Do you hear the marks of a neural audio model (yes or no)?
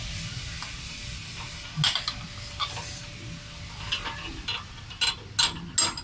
no